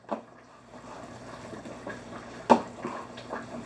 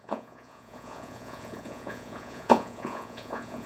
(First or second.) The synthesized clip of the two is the second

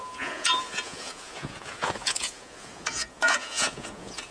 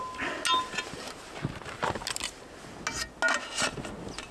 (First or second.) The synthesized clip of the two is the first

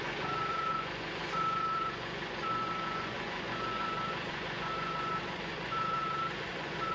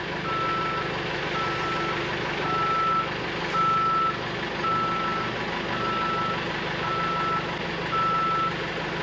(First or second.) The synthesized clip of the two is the first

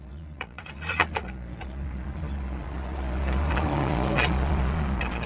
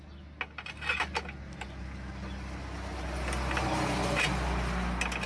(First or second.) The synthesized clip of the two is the first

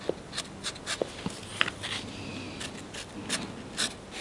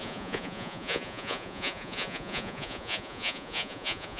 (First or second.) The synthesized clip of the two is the second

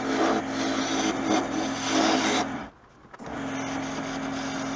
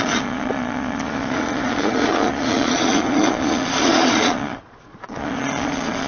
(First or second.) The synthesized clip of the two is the second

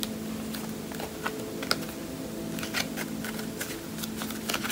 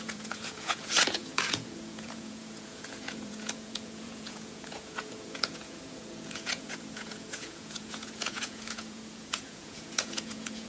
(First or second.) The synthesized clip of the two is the second